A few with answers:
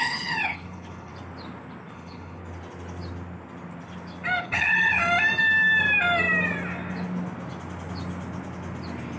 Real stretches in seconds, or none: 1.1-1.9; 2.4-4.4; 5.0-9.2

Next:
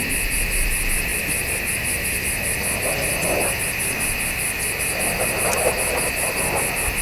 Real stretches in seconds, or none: 0.0-7.0

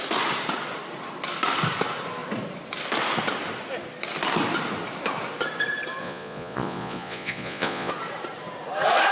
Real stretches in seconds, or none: 0.0-6.0; 7.9-9.1

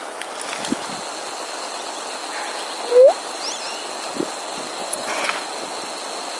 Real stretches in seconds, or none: 0.0-4.8; 5.4-6.4

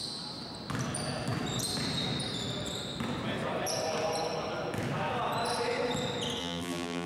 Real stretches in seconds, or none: 0.0-6.4

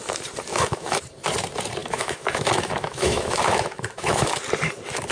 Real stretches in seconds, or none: 0.0-0.5; 1.0-1.8; 4.3-5.1